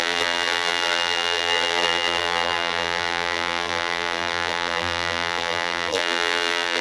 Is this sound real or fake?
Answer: fake